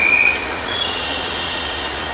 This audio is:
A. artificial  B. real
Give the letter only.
A